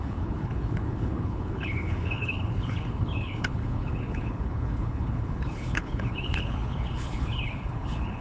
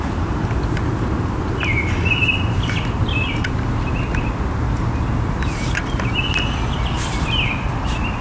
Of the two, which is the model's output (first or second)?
first